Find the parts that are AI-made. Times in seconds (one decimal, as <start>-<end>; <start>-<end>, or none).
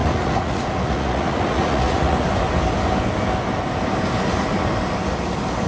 0.0-2.3